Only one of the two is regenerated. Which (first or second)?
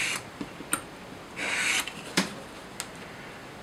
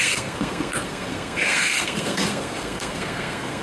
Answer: second